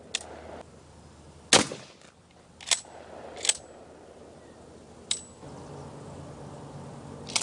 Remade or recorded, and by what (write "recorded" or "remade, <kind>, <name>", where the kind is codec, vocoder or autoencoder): recorded